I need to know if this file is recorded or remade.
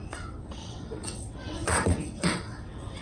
remade